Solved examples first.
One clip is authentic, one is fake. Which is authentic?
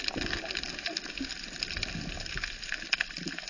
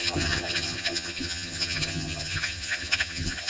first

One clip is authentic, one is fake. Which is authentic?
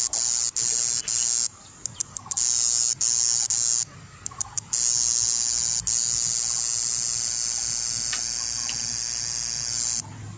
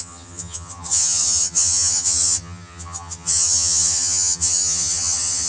first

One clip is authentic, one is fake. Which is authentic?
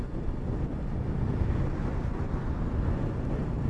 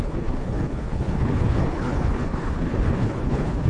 first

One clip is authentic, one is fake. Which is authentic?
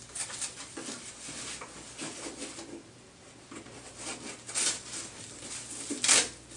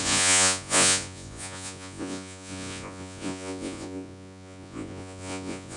first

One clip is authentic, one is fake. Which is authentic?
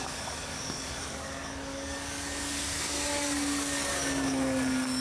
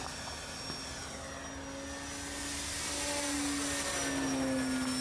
second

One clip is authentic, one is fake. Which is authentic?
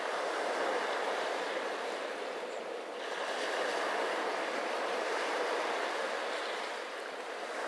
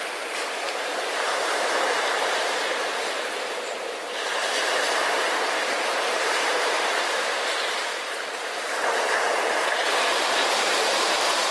first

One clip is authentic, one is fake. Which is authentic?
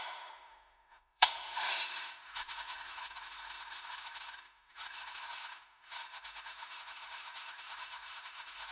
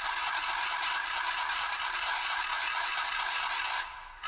second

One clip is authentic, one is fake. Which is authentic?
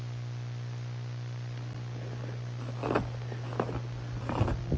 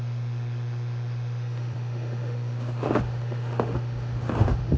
first